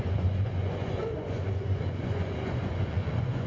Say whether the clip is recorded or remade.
remade